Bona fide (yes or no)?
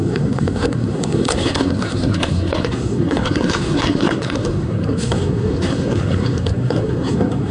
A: no